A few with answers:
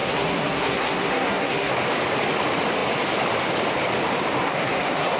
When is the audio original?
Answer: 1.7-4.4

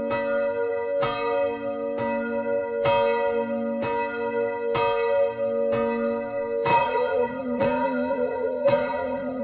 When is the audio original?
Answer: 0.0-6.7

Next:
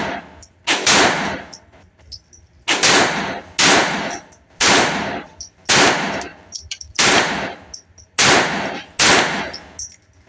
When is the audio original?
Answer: 0.0-3.8; 5.7-6.3; 7.3-10.3

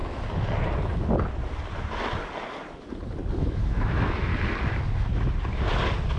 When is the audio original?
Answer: 0.0-3.4; 4.3-6.2